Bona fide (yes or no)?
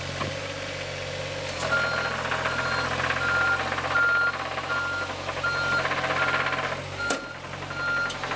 yes